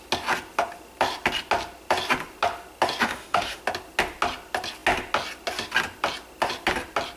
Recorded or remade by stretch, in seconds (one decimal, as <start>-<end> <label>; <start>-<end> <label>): 0.0-3.0 recorded; 3.0-3.6 remade; 3.6-7.2 recorded